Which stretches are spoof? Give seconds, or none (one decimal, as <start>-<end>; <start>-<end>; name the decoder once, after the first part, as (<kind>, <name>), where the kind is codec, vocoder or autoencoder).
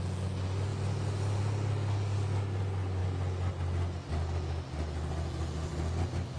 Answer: none